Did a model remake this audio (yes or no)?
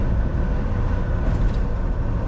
no